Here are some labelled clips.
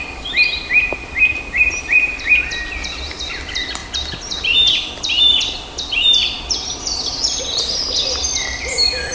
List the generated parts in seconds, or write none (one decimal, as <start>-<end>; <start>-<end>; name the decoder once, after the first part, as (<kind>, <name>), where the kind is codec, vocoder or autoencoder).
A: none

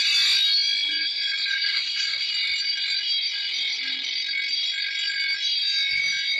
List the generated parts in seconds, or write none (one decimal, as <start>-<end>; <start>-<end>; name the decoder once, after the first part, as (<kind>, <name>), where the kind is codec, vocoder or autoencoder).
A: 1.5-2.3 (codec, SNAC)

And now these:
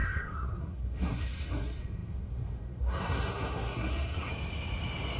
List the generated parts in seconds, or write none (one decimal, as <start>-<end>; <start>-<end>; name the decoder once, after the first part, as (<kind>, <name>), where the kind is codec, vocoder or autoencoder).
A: 0.0-4.3 (codec, SNAC)

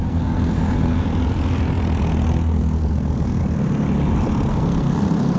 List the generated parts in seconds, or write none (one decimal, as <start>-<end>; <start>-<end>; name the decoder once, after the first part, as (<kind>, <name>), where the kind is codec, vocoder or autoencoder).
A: 0.0-1.1 (codec, SNAC); 2.3-3.4; 4.5-5.4

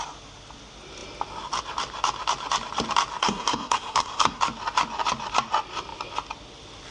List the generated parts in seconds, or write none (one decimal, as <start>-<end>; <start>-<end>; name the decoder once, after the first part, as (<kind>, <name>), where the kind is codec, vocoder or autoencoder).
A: 3.2-4.4 (codec, SNAC)

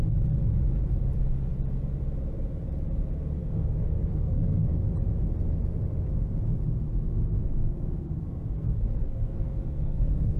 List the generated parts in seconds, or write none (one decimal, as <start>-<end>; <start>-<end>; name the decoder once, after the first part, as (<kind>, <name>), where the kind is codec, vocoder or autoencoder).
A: 3.4-4.8 (codec, SNAC); 7.1-10.4

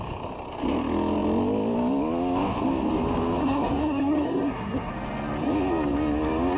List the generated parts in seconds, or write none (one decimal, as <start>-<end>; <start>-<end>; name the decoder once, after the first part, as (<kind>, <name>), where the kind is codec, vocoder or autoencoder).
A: 3.4-4.9 (codec, SNAC)

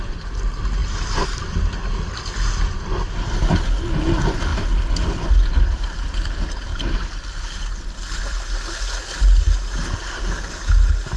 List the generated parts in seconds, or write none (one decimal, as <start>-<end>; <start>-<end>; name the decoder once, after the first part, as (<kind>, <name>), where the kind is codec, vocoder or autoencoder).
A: none